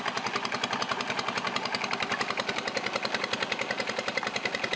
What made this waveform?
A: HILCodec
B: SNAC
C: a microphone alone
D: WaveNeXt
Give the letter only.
C